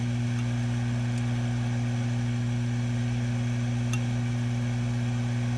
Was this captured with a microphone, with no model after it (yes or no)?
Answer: yes